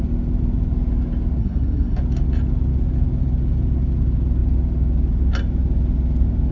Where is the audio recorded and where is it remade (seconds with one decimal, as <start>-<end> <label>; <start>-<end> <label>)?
0.0-1.4 recorded; 1.4-2.0 remade; 2.0-6.5 recorded